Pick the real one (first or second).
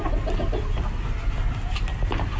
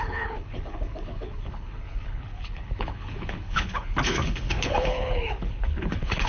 first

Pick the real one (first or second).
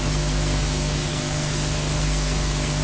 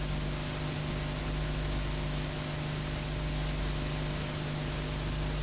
second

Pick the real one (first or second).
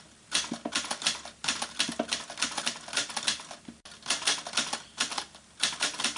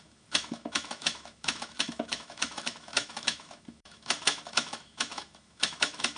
first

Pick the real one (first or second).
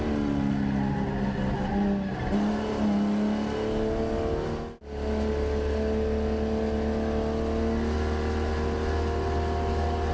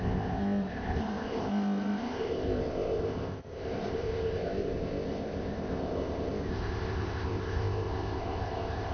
first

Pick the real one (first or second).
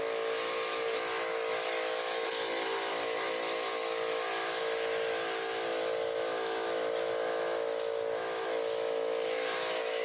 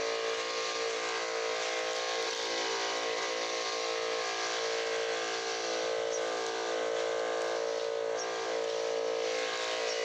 second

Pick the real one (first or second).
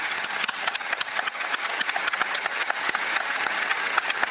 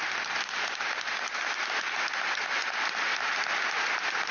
second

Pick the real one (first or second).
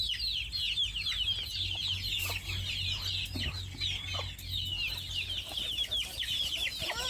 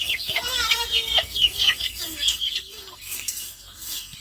first